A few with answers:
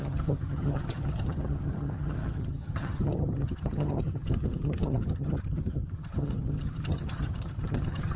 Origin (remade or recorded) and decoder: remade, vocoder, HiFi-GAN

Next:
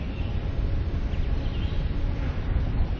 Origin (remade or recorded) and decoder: recorded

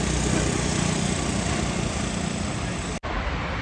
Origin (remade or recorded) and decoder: recorded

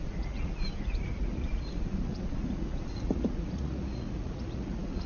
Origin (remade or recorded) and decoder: remade, vocoder, Vocos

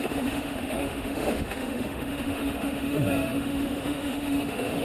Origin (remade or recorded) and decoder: remade, autoencoder, DAC-VAE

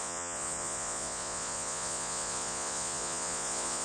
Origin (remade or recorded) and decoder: remade, vocoder, Vocos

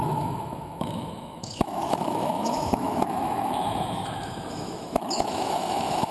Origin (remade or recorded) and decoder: remade, autoencoder, DAC-VAE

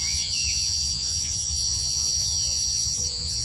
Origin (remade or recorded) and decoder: remade, vocoder, Vocos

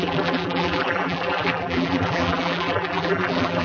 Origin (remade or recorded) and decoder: remade, vocoder, BigVGAN v2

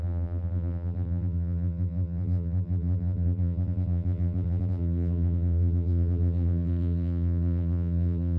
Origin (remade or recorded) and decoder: remade, vocoder, BigVGAN v2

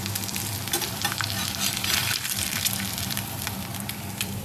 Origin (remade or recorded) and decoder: remade, vocoder, BigVGAN v2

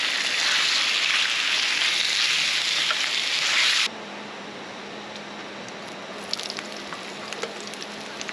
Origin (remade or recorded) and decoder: recorded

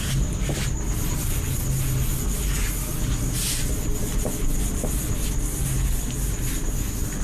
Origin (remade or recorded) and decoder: recorded